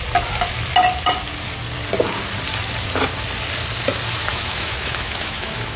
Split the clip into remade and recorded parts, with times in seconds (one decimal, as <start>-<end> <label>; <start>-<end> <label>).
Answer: 0.0-4.3 recorded; 4.3-5.8 remade